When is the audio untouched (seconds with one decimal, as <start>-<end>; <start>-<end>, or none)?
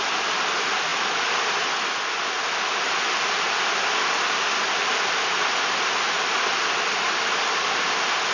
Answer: 0.0-8.3